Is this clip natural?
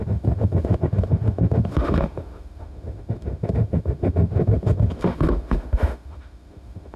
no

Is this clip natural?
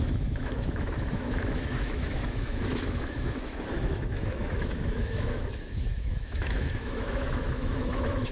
no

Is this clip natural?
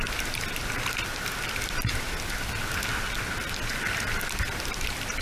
yes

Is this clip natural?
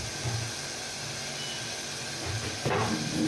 yes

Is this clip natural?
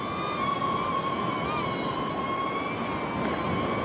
yes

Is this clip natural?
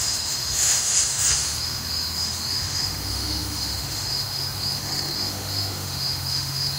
no